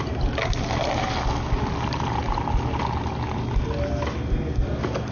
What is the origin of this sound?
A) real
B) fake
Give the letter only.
A